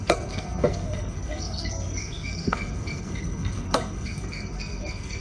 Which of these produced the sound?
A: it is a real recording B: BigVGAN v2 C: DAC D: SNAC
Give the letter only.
D